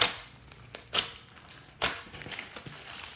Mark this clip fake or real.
real